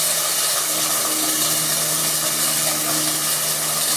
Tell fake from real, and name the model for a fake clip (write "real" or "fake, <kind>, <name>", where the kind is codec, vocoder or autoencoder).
real